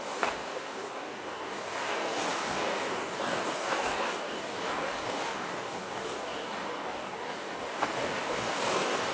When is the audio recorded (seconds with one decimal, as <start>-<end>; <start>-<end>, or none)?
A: none